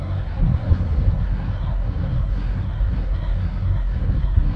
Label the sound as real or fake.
fake